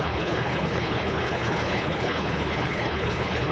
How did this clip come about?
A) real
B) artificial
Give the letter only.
B